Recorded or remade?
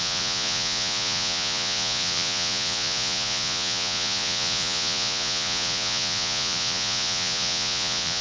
remade